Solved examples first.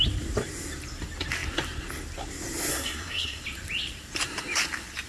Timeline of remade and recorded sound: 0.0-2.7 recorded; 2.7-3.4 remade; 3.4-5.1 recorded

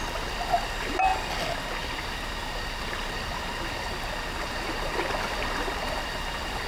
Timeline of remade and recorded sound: 0.0-6.7 recorded

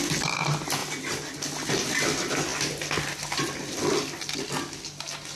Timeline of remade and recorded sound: 0.0-5.4 recorded

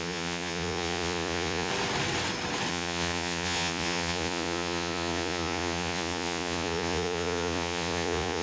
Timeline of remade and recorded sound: 0.0-1.7 remade; 1.7-2.7 recorded; 2.7-8.4 remade

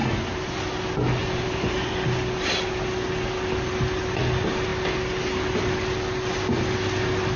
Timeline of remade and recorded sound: 0.0-1.2 recorded; 1.2-1.9 remade; 1.9-7.4 recorded

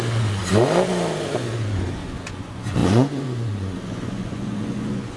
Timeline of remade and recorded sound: 0.0-0.4 remade; 0.4-1.3 recorded; 1.3-5.2 remade

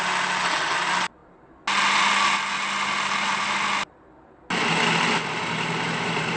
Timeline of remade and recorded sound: 0.0-6.4 recorded